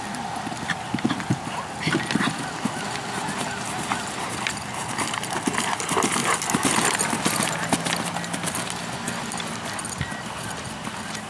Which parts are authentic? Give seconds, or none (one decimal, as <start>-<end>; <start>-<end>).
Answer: 0.0-11.3